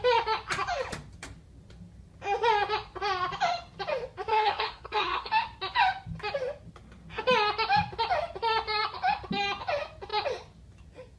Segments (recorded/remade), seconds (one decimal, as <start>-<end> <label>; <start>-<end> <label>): 0.0-4.3 recorded; 4.3-5.3 remade; 5.3-11.2 recorded